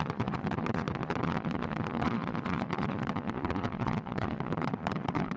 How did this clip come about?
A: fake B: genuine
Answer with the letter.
A